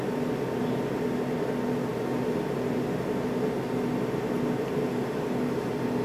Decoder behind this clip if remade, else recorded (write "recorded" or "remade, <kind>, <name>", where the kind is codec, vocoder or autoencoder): recorded